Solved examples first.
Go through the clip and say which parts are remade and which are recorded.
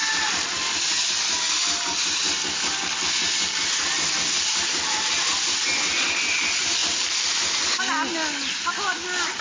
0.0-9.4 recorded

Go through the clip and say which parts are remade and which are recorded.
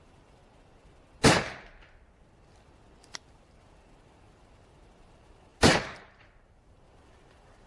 0.0-0.4 remade; 0.4-3.1 recorded; 3.1-7.7 remade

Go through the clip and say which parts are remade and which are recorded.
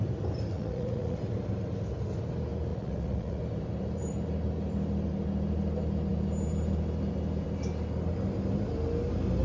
0.0-0.5 recorded; 0.5-1.2 remade; 1.2-2.7 recorded; 2.7-3.4 remade; 3.4-9.4 recorded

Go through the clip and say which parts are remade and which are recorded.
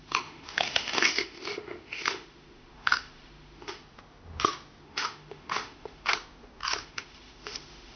0.0-3.8 remade; 3.8-4.8 recorded; 4.8-6.1 remade; 6.1-6.8 recorded; 6.8-8.0 remade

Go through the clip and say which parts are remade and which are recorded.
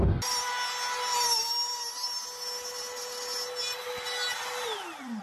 0.0-5.2 recorded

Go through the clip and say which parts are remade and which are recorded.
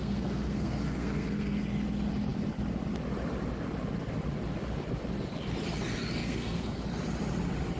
0.0-1.6 remade; 1.6-6.2 recorded; 6.2-6.8 remade; 6.8-7.8 recorded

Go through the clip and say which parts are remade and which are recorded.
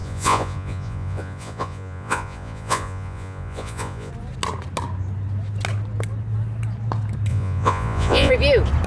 0.0-4.1 remade; 4.1-7.3 recorded; 7.3-8.3 remade; 8.3-8.9 recorded